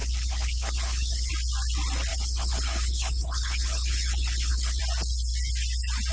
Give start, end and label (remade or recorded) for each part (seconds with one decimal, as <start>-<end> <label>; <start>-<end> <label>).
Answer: 0.0-1.3 remade; 1.3-2.1 recorded; 2.1-4.8 remade; 4.8-6.1 recorded